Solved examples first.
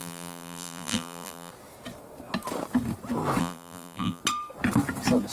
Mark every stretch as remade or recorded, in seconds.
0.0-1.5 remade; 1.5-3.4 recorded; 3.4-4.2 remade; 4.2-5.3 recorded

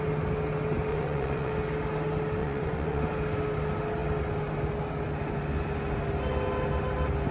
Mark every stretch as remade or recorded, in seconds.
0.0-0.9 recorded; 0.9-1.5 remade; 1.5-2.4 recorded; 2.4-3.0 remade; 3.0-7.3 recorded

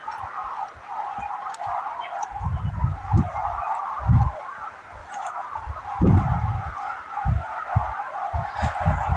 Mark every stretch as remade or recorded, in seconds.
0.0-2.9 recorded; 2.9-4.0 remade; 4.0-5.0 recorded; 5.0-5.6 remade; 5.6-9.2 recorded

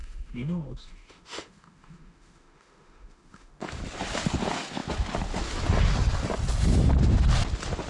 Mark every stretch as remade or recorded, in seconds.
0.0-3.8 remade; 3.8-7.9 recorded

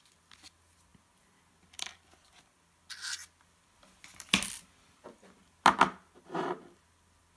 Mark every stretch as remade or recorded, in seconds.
0.0-7.4 recorded

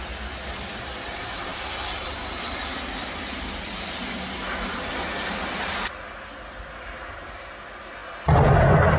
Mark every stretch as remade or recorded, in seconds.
0.0-1.5 recorded; 1.5-5.1 remade; 5.1-8.0 recorded; 8.0-9.0 remade